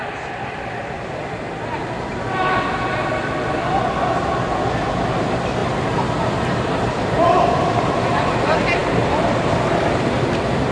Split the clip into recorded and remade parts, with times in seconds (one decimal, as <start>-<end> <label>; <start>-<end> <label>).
0.0-2.1 remade; 2.1-4.4 recorded; 4.4-8.8 remade; 8.8-9.8 recorded; 9.8-10.7 remade